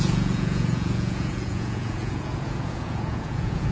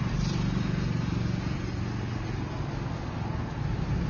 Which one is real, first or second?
second